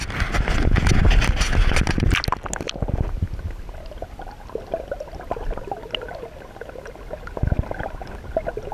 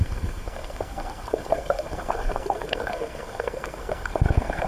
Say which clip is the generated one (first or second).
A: second